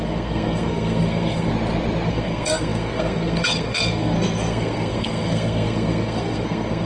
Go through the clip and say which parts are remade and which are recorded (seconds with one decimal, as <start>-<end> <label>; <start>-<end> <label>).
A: 0.0-1.5 remade; 1.5-2.1 recorded; 2.1-6.9 remade